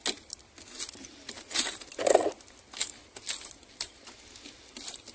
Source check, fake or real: real